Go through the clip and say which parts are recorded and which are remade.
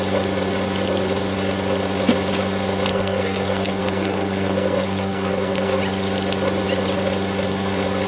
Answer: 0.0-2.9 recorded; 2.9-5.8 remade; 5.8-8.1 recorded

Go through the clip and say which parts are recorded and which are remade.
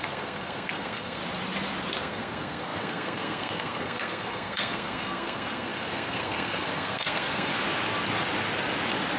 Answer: 0.0-1.2 remade; 1.2-2.0 recorded; 2.0-7.5 remade; 7.5-9.2 recorded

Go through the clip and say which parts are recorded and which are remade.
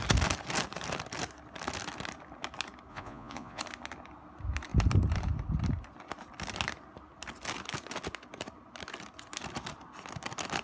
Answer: 0.0-2.9 recorded; 2.9-3.6 remade; 3.6-10.6 recorded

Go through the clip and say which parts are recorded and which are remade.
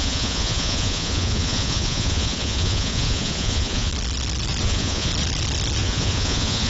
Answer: 0.0-3.9 remade; 3.9-4.6 recorded; 4.6-5.1 remade; 5.1-5.8 recorded; 5.8-6.7 remade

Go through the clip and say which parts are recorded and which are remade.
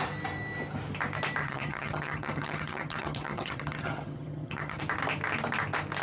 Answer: 0.0-1.4 recorded; 1.4-4.8 remade; 4.8-6.0 recorded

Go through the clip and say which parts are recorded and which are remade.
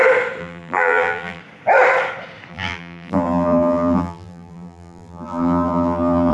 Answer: 0.0-0.4 recorded; 0.4-1.4 remade; 1.4-2.5 recorded; 2.5-6.3 remade